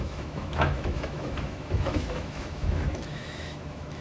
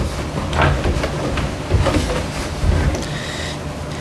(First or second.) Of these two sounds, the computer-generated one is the first